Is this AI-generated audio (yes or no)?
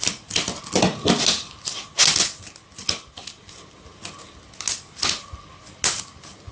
no